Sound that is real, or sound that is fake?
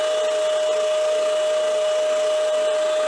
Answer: real